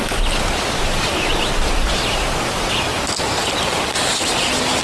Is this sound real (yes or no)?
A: yes